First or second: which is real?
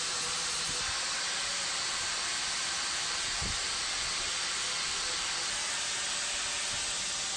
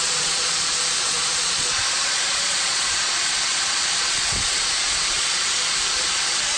first